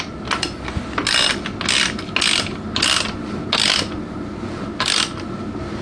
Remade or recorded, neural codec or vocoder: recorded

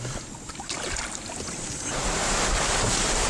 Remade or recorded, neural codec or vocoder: recorded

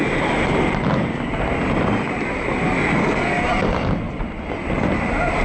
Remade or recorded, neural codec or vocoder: recorded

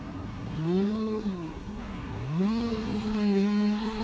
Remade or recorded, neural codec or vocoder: remade, codec, SNAC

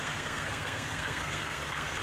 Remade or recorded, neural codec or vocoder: remade, codec, SNAC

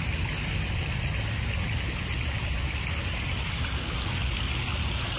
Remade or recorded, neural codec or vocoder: recorded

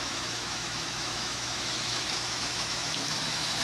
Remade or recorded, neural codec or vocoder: remade, autoencoder, DAC-VAE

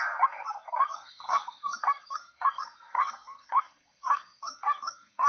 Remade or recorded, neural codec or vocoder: remade, codec, SNAC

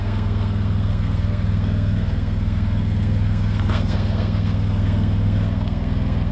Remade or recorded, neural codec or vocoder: remade, codec, SNAC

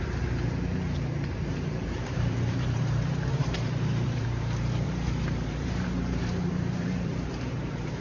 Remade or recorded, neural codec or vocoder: remade, vocoder, BigVGAN v2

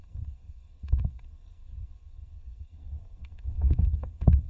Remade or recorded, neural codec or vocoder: remade, codec, SNAC